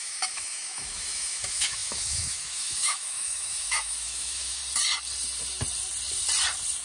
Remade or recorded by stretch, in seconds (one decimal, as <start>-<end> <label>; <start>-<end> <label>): 0.0-4.6 remade; 4.6-6.8 recorded